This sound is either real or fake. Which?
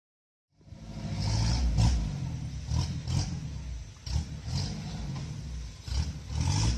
real